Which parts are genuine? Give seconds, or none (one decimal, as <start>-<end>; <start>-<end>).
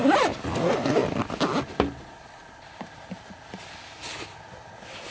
0.0-5.1